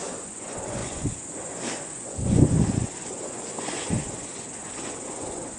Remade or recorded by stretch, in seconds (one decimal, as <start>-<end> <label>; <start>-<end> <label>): 0.0-5.6 remade